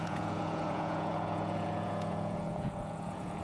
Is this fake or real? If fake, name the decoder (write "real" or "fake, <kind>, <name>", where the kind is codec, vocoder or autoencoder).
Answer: fake, vocoder, Vocos